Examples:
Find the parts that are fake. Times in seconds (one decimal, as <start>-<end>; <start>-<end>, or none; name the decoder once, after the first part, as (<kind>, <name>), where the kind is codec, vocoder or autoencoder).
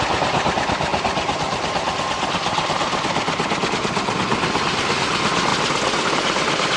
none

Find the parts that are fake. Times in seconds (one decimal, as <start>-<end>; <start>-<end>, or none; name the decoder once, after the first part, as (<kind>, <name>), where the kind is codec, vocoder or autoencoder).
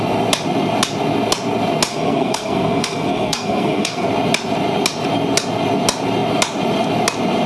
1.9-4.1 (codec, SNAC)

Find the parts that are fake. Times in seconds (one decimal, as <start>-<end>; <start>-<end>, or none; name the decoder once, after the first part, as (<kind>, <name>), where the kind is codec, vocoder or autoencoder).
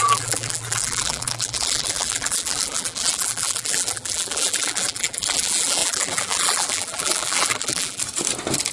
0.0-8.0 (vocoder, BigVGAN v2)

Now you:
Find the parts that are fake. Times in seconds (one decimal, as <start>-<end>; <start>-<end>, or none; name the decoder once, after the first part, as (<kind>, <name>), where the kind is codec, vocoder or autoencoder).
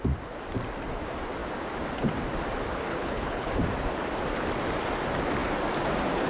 2.9-3.5 (codec, HILCodec)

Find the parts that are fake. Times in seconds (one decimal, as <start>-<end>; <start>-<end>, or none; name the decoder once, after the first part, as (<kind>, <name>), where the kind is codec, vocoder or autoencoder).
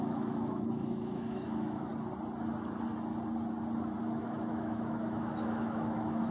0.0-1.9 (autoencoder, DAC-VAE); 4.0-6.3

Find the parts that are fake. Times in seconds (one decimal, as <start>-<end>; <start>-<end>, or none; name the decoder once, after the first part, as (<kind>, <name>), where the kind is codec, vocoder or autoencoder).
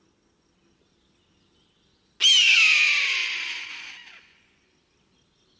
3.2-4.7 (vocoder, Vocos)